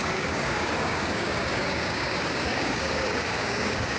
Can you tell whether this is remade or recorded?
remade